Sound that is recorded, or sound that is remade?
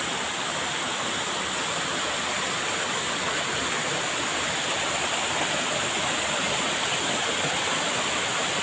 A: recorded